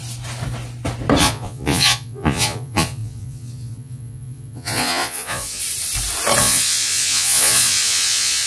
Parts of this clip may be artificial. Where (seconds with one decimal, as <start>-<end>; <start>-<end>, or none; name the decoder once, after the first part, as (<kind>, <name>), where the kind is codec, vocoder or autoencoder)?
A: 1.2-5.6 (vocoder, Vocos); 6.4-8.5